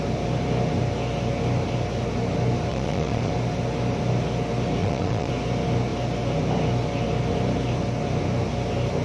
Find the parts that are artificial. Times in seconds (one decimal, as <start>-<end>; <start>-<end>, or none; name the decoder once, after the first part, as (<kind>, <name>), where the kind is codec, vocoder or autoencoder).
2.7-3.3 (vocoder, Vocos); 4.8-5.3